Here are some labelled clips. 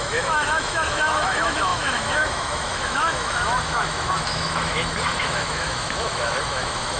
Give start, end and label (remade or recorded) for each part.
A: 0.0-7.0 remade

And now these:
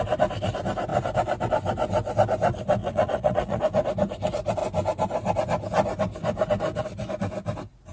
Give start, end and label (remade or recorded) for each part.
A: 0.0-2.8 recorded; 2.8-3.6 remade; 3.6-7.9 recorded

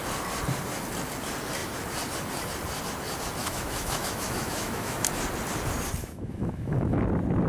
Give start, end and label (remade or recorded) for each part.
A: 0.0-3.4 recorded; 3.4-5.1 remade; 5.1-6.0 recorded; 6.0-7.0 remade; 7.0-7.5 recorded

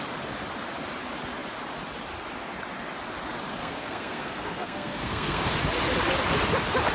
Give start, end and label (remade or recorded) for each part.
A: 0.0-3.6 recorded; 3.6-5.4 remade; 5.4-6.9 recorded